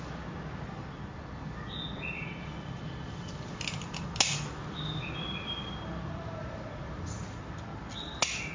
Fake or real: real